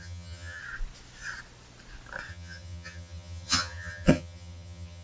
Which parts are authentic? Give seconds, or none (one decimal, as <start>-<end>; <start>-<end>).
0.6-2.3